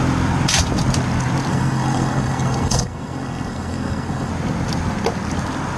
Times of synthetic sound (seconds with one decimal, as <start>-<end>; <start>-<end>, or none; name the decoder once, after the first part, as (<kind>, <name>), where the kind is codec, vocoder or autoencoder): 1.5-4.3 (codec, SNAC)